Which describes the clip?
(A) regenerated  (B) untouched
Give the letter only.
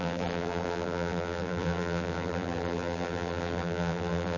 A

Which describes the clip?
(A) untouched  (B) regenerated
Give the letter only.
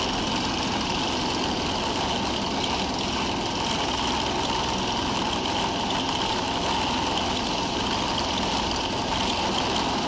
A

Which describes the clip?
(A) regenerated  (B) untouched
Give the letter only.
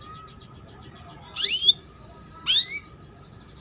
B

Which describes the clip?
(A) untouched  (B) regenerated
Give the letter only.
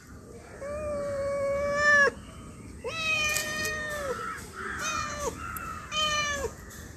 A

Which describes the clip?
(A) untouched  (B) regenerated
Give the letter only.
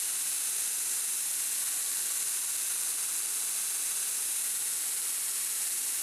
A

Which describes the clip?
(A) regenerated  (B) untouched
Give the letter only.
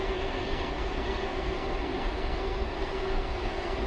A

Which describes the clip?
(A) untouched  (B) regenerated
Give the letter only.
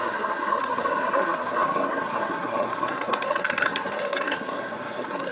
B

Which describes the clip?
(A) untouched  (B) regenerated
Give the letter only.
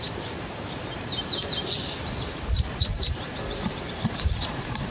B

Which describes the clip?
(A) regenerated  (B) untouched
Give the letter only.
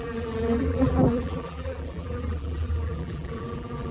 A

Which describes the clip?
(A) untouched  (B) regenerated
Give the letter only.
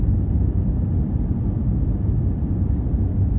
A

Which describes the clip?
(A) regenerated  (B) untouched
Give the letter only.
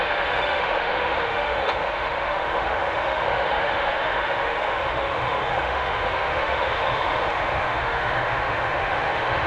A